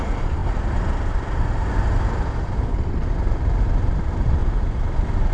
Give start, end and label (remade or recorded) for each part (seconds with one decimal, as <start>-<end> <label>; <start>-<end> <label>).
0.0-4.4 recorded; 4.4-5.3 remade